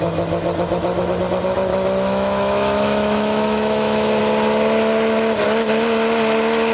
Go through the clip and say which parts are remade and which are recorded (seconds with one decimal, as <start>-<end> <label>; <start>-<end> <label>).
0.0-1.7 recorded; 1.7-4.2 remade; 4.2-6.7 recorded